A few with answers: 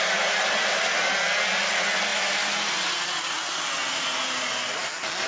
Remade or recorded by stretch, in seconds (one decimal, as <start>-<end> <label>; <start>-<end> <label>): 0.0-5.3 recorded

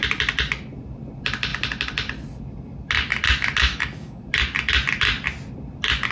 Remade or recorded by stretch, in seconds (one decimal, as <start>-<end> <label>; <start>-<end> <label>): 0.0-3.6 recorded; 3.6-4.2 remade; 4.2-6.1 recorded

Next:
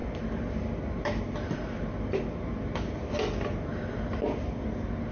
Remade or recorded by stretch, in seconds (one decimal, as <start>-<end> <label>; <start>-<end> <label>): 0.0-5.1 recorded